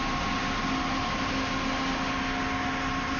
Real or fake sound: real